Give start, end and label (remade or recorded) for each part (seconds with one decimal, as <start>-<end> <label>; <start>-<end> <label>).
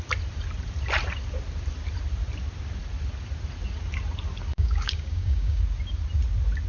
0.0-4.5 recorded; 4.5-5.6 remade; 5.6-6.7 recorded